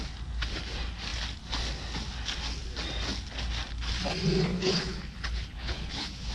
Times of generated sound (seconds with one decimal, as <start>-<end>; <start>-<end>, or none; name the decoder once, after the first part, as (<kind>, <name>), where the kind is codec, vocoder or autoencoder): 4.5-6.3 (codec, HILCodec)